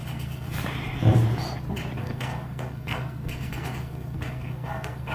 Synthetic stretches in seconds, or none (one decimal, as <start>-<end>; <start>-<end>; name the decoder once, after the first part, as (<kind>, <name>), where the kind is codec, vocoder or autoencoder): 0.0-0.6 (codec, SNAC); 2.0-5.1